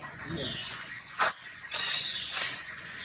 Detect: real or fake fake